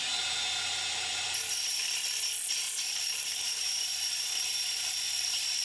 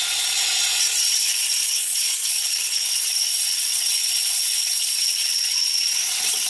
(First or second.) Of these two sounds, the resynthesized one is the second